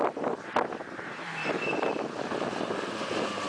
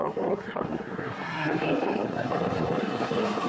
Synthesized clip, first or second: second